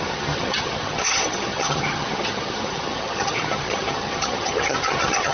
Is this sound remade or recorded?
remade